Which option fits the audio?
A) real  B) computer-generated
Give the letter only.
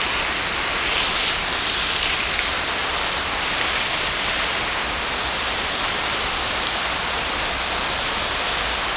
A